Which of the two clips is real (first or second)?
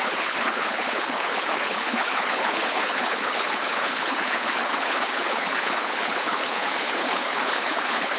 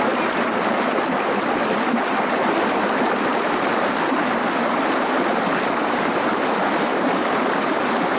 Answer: second